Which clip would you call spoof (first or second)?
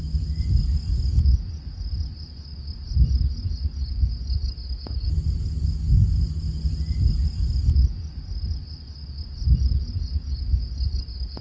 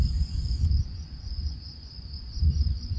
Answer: second